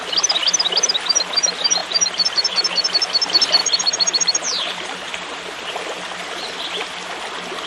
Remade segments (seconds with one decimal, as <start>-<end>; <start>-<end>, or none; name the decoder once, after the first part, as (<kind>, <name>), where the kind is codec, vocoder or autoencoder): 1.8-2.9 (vocoder, BigVGAN v2); 3.6-5.7